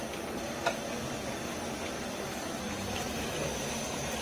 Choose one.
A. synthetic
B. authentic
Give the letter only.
B